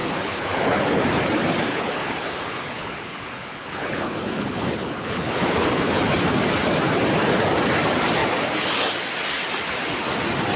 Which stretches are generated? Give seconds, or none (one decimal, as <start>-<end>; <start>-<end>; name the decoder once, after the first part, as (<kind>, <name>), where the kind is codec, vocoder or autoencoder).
0.0-1.0 (codec, HILCodec); 1.7-6.0